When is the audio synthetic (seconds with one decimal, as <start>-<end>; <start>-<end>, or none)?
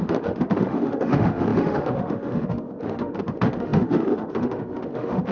0.0-5.3